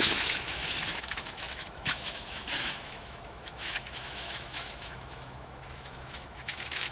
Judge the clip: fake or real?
fake